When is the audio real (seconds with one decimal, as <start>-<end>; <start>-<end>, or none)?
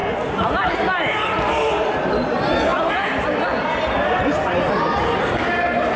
0.0-6.0